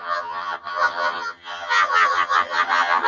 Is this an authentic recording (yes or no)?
no